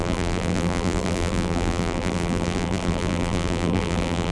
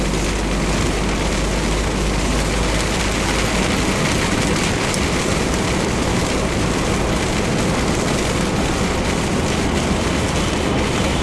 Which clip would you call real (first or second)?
second